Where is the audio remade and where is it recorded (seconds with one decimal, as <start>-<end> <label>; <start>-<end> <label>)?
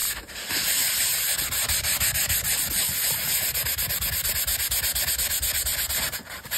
0.0-6.6 recorded